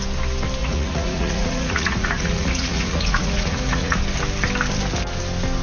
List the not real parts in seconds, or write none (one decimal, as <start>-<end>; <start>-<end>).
0.6-4.0